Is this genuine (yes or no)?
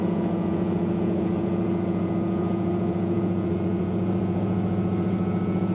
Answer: no